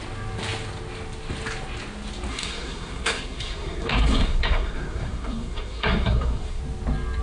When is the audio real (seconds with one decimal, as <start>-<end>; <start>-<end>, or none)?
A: 0.0-2.3; 6.6-7.2